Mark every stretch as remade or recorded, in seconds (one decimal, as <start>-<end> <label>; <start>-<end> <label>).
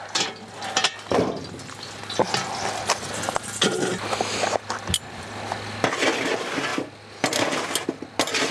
0.0-8.5 recorded